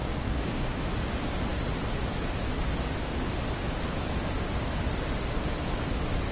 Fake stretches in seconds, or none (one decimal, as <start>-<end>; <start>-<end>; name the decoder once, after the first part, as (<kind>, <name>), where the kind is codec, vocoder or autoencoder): 0.0-0.8 (codec, DAC)